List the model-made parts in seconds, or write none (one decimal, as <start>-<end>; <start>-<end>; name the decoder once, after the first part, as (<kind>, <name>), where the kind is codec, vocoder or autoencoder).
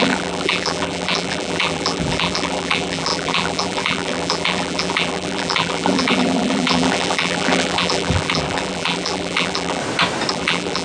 0.0-9.8 (vocoder, BigVGAN v2); 10.3-10.8